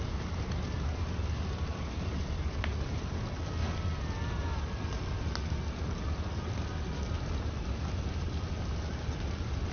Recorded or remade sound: recorded